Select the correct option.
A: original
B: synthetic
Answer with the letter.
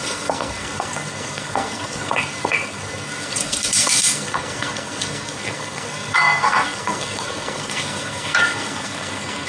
B